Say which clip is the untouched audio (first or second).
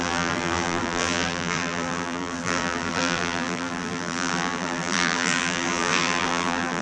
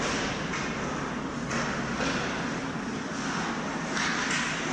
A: second